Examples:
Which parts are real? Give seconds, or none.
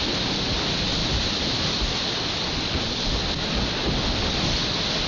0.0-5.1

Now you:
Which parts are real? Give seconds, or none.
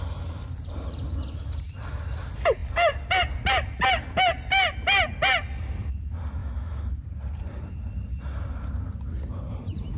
0.0-6.4; 6.9-10.0